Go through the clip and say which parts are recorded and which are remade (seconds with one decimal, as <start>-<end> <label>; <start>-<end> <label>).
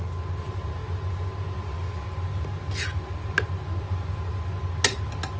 0.0-5.4 recorded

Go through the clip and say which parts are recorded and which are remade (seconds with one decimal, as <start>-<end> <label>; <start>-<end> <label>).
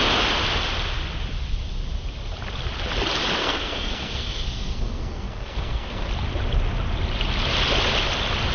0.0-3.4 recorded; 3.4-6.1 remade; 6.1-8.5 recorded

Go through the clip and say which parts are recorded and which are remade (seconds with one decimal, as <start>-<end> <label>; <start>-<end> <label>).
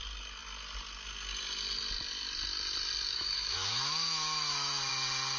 0.0-3.1 recorded; 3.1-4.9 remade; 4.9-5.4 recorded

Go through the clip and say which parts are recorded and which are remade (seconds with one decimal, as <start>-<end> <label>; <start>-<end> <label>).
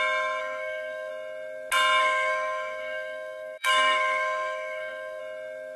0.0-0.4 recorded; 0.4-1.1 remade; 1.1-2.0 recorded; 2.0-5.2 remade; 5.2-5.8 recorded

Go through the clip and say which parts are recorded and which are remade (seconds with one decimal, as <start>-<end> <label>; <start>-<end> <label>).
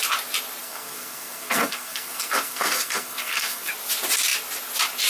0.0-0.6 recorded; 0.6-3.7 remade; 3.7-5.1 recorded